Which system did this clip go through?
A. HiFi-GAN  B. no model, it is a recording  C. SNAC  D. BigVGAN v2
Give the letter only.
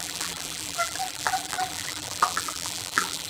D